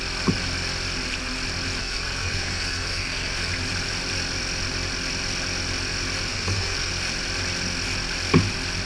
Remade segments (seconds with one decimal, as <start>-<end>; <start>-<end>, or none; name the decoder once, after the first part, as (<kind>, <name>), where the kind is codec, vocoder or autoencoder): 1.8-3.5 (codec, SNAC); 6.3-6.9